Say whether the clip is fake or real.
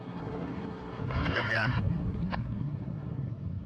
fake